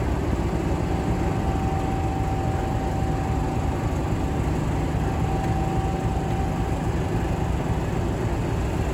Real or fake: real